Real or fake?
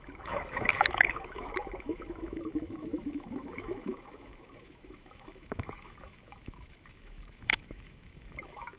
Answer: fake